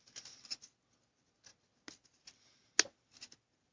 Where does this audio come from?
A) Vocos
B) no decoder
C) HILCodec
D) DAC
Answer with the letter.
B